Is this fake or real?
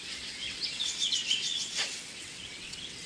fake